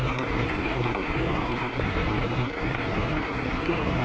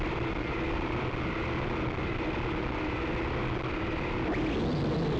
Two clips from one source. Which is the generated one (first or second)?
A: first